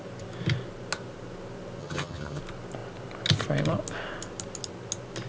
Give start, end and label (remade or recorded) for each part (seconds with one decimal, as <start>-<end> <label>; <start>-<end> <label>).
0.0-1.8 recorded; 1.8-2.4 remade; 2.4-5.3 recorded